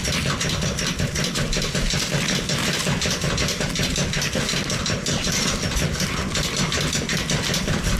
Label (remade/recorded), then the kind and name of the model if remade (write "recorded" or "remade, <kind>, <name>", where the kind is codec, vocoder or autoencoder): recorded